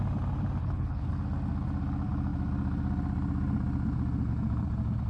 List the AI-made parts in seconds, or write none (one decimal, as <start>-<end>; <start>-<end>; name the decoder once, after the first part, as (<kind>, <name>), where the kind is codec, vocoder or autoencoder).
0.6-1.1 (codec, HILCodec)